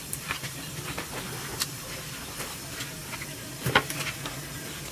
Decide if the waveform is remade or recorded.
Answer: remade